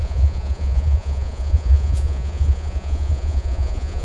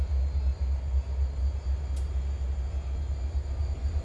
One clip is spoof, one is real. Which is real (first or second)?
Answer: second